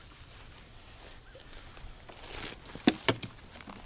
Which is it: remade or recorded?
recorded